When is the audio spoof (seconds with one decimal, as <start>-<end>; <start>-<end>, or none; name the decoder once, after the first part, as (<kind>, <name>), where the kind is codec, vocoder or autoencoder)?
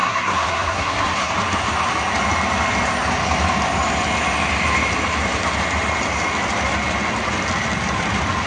0.0-1.3 (codec, SNAC)